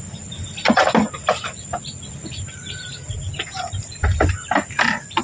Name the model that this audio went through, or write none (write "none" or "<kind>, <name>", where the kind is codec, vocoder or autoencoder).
none